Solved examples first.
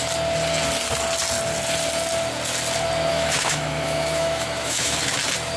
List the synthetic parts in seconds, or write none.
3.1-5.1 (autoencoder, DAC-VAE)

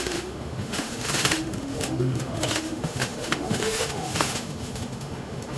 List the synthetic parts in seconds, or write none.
0.0-5.6 (autoencoder, DAC-VAE)

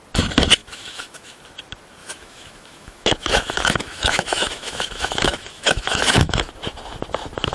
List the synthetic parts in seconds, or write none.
0.6-1.4 (autoencoder, DAC-VAE); 2.0-6.5

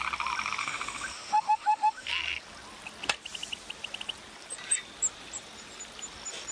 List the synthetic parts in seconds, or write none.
0.6-2.1 (autoencoder, DAC-VAE)

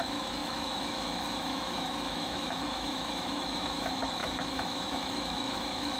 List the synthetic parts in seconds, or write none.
0.0-6.0 (autoencoder, DAC-VAE)

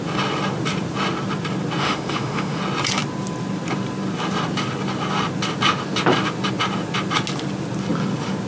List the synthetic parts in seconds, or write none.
1.8-2.6 (autoencoder, DAC-VAE)

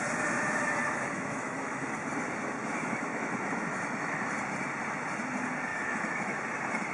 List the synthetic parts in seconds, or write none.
0.8-1.9 (autoencoder, DAC-VAE); 2.6-4.2; 5.7-6.4